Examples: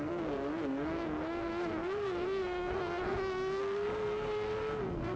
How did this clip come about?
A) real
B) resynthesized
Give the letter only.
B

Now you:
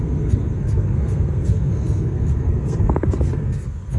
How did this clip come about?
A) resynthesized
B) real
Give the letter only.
A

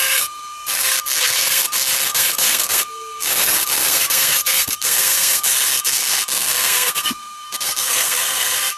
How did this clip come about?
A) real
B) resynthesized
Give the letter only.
B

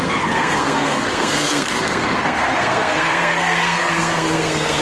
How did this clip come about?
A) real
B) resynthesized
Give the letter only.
B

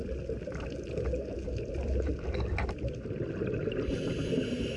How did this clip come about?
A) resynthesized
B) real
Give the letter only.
B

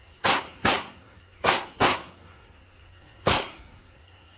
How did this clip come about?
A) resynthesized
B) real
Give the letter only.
A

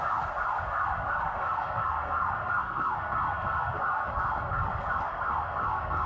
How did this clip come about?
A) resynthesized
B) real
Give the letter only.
A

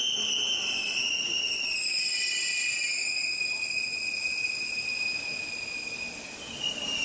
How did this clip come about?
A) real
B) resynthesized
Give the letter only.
A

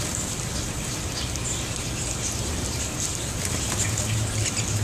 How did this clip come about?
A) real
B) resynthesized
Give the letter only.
A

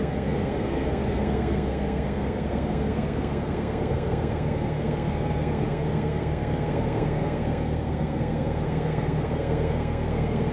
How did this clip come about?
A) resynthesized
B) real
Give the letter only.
A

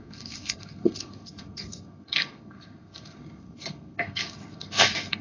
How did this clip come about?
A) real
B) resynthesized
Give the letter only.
B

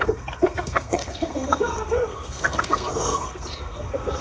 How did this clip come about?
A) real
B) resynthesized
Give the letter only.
B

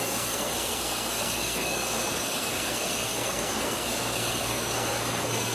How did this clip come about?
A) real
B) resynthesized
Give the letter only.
B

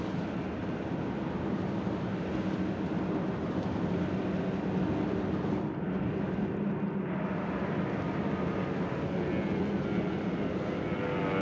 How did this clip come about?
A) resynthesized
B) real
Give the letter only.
B